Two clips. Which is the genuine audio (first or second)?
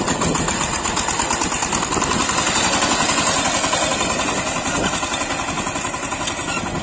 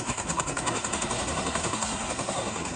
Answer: first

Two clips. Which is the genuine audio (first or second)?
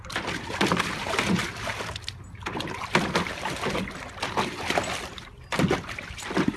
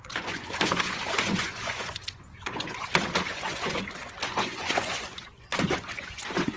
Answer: first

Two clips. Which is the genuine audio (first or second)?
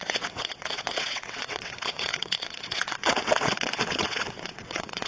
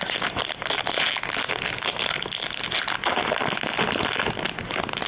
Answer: second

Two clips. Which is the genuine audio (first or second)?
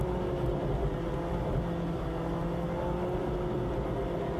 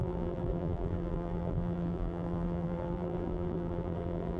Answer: first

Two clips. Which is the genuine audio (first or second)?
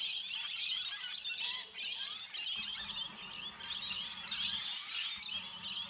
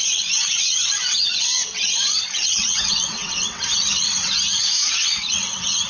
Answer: first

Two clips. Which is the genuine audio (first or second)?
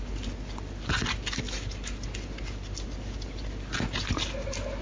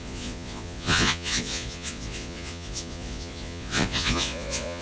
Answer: first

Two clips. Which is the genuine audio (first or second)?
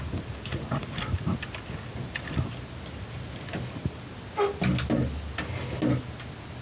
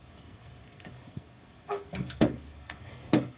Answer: first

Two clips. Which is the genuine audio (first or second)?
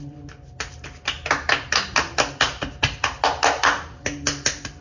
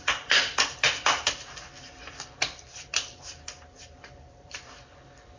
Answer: first